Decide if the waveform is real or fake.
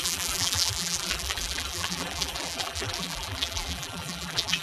fake